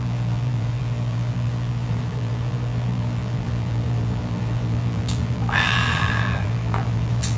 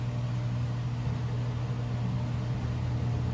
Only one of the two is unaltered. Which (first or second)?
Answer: second